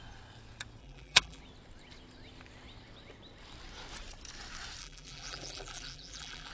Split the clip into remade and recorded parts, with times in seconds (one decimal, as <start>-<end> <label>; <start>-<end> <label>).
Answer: 0.0-0.8 recorded; 0.8-1.4 remade; 1.4-4.8 recorded; 4.8-6.5 remade